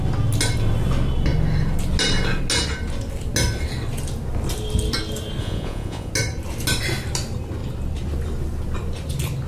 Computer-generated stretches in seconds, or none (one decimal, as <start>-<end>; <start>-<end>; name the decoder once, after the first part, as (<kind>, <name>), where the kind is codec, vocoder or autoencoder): 5.4-6.1 (vocoder, Vocos)